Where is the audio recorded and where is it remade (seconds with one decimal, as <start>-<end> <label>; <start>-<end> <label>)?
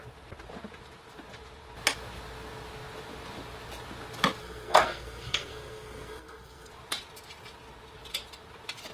0.0-4.4 recorded; 4.4-6.7 remade; 6.7-8.9 recorded